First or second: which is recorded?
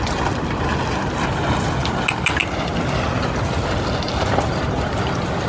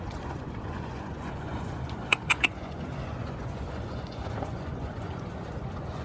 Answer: first